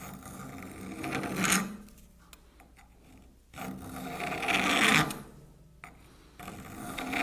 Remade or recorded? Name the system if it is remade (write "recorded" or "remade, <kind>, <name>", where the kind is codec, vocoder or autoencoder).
recorded